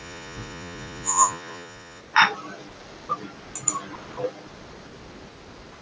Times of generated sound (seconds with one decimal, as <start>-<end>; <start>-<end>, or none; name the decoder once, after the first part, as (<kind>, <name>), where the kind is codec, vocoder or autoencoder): 0.0-2.0 (vocoder, Vocos)